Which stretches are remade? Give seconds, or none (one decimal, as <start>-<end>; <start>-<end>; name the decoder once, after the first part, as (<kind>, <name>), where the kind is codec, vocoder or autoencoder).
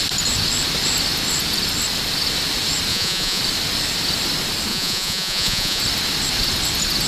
2.9-3.4 (vocoder, Vocos); 4.7-5.8